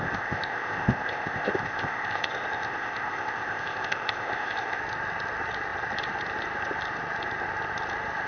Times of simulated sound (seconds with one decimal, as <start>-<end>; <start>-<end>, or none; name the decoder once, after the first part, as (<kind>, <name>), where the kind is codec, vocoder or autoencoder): 0.0-4.8 (codec, ZipCodec)